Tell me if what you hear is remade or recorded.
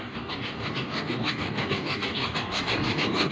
remade